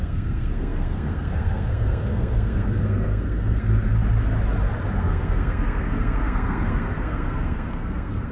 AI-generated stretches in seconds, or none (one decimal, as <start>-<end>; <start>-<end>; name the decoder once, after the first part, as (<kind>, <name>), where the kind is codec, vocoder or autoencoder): 0.0-4.0 (codec, SNAC); 5.0-8.3